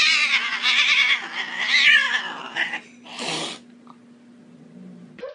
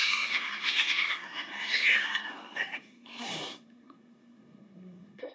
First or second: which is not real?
second